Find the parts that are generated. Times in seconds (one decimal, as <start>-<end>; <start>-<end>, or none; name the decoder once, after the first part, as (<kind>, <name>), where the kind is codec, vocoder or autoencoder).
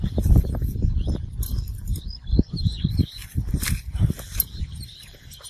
0.0-1.9 (vocoder, BigVGAN v2); 2.8-3.2; 4.6-5.5